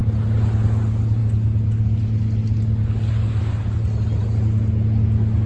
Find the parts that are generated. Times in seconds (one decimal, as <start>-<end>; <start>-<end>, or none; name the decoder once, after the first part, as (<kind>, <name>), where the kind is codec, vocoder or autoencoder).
none